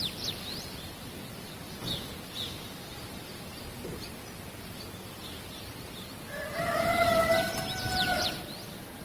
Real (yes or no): yes